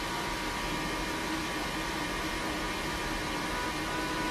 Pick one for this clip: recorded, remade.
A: recorded